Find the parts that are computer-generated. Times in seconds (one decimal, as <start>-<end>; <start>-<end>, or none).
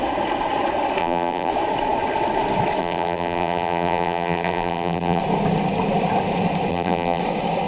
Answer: 1.0-1.5; 2.8-5.2; 6.7-7.2